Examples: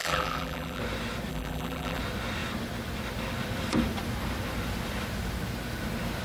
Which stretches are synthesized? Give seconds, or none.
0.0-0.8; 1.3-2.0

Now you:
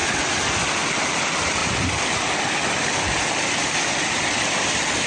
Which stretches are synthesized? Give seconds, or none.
0.9-1.6

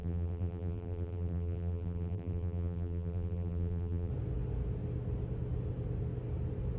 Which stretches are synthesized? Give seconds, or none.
0.0-4.1

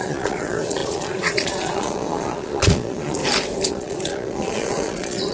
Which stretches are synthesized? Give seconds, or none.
0.0-3.2; 3.7-5.3

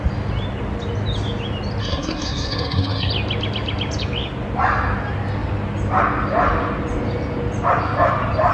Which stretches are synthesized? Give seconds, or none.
1.8-3.1

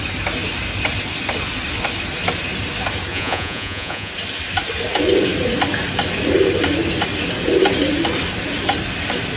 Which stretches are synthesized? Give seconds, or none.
3.1-4.1